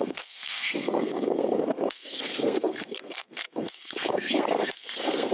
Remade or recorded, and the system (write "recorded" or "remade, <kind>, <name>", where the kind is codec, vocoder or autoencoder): remade, codec, SNAC